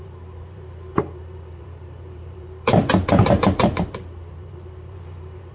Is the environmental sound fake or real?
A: fake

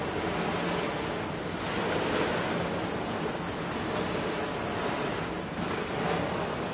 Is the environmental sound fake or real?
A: real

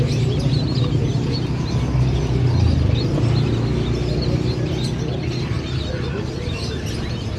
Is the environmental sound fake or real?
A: real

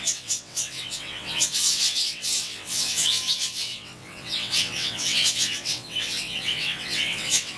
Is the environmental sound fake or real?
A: fake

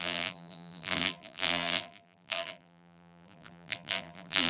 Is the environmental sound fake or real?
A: fake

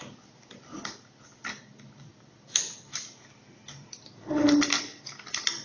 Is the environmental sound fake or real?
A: real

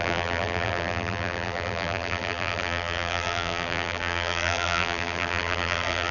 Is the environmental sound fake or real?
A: fake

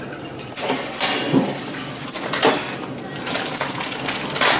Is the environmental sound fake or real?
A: fake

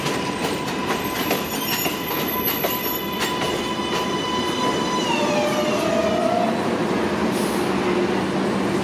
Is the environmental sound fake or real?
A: real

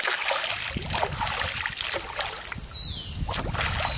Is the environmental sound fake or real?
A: real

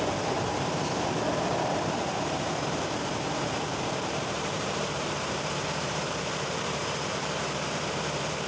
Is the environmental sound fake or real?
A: fake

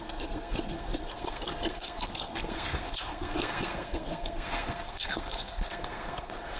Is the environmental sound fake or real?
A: fake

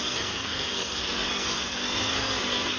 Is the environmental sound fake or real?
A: fake